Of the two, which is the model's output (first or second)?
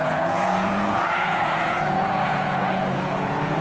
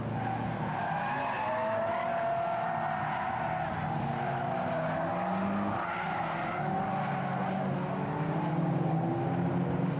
first